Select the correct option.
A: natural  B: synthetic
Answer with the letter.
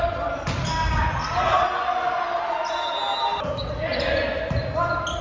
A